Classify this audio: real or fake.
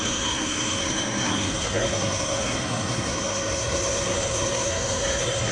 fake